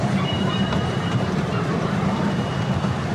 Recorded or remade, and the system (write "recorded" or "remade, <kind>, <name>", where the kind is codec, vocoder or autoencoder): remade, vocoder, BigVGAN v2